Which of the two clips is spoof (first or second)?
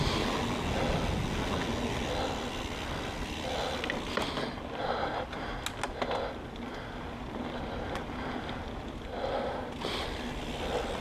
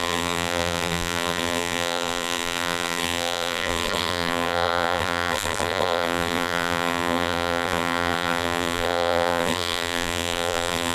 second